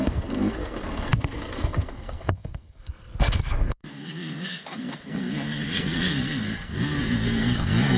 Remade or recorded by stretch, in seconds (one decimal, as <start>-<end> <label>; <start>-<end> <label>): 0.0-8.0 remade